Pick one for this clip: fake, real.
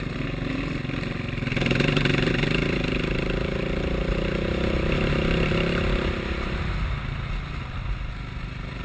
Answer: real